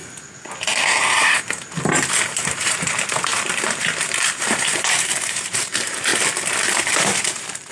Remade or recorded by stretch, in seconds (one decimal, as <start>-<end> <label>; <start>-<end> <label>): 0.0-2.1 recorded; 2.1-6.1 remade; 6.1-6.8 recorded; 6.8-7.7 remade